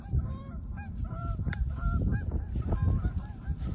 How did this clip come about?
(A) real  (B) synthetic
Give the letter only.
B